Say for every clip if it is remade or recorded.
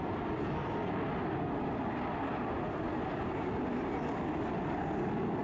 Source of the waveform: recorded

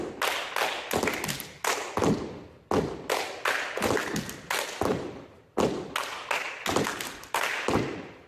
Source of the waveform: recorded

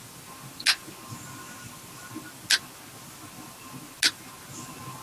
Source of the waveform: recorded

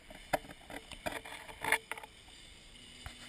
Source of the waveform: recorded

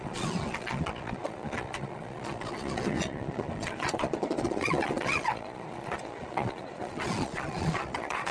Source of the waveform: remade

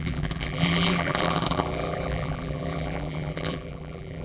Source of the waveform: remade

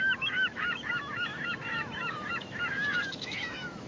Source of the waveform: remade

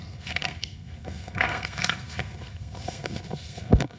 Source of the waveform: remade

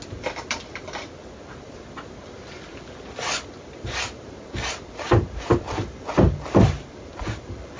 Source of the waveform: recorded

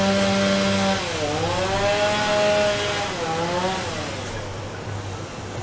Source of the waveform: recorded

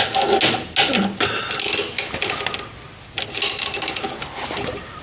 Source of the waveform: recorded